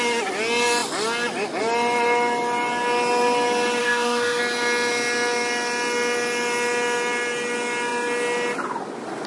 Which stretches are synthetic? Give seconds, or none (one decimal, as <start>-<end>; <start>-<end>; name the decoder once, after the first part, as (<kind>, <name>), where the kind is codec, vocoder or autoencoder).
3.8-4.4 (autoencoder, DAC-VAE)